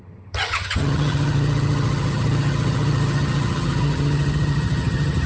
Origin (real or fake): fake